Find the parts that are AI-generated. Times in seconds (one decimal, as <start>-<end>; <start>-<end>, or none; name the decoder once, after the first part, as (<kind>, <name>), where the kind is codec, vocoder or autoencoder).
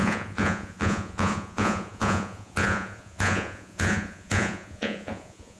0.0-5.6 (vocoder, Vocos)